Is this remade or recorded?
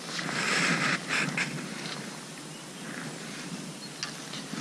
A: recorded